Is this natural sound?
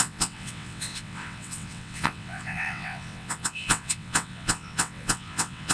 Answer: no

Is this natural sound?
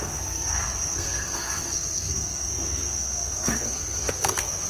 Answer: no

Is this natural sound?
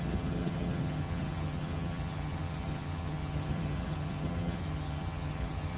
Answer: no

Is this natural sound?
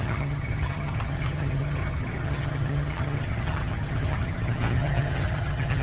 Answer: no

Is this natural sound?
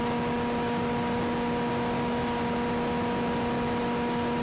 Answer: yes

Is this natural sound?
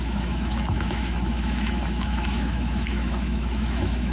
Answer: no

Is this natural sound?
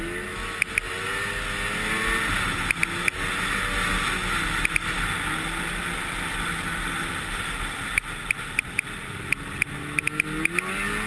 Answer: yes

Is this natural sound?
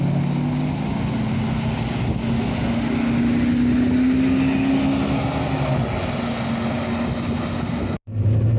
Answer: yes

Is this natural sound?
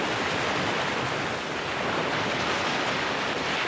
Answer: yes